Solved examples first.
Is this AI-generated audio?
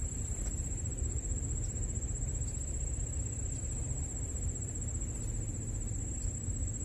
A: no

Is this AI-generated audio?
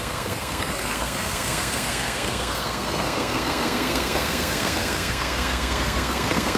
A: yes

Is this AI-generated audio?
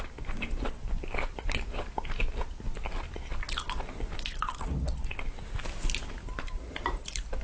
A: no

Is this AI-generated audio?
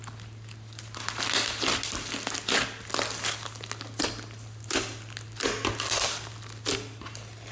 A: no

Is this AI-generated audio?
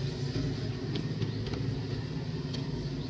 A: no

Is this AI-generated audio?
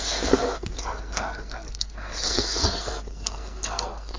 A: yes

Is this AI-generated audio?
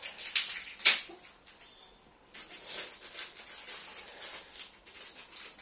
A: no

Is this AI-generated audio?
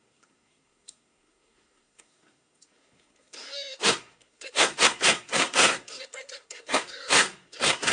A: yes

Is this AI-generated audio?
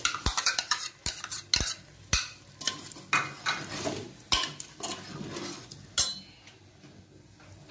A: no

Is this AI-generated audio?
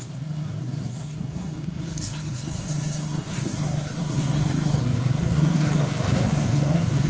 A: yes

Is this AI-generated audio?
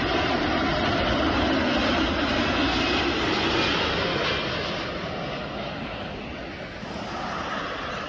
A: no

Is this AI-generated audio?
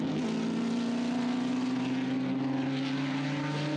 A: no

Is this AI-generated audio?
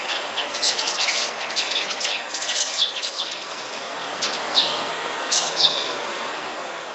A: yes